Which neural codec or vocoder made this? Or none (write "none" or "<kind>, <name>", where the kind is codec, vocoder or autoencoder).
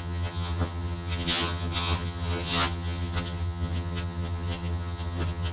vocoder, HiFi-GAN